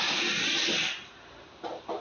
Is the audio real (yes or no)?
yes